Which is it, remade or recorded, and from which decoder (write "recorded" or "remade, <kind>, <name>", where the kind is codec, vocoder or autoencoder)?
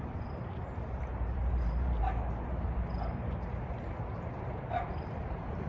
remade, vocoder, BigVGAN v2